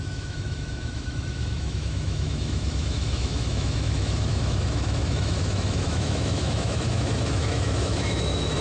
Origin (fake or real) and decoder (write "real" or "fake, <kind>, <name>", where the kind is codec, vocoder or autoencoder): fake, autoencoder, DAC-VAE